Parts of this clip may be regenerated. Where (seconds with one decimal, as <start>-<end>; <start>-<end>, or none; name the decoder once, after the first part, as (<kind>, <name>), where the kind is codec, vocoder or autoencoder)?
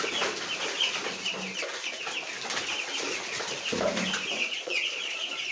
4.4-5.5 (vocoder, Vocos)